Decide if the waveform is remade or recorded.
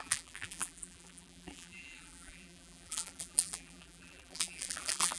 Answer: remade